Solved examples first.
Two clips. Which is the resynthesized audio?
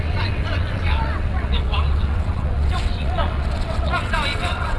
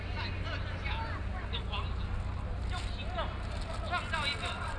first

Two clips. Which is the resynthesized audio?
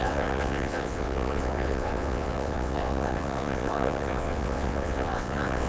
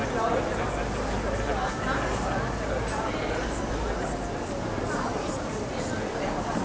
first